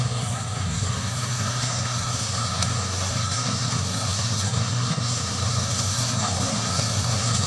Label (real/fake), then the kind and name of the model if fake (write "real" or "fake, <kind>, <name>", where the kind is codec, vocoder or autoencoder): fake, codec, SNAC